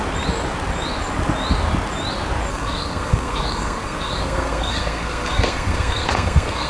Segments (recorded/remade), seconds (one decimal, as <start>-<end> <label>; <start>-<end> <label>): 0.0-2.5 recorded; 2.5-6.7 remade

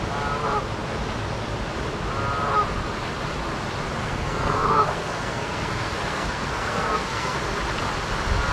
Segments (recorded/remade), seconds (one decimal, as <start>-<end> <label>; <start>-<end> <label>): 0.0-4.0 recorded; 4.0-7.4 remade; 7.4-8.5 recorded

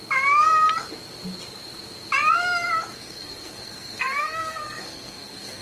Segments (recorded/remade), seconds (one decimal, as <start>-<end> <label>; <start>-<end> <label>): 0.0-2.9 recorded; 2.9-5.6 remade